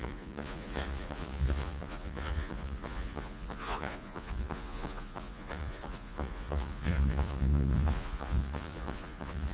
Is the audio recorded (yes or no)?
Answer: no